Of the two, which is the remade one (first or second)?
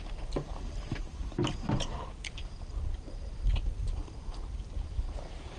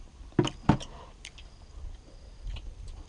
first